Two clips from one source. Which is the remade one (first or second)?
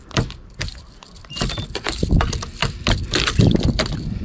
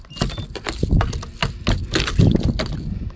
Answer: first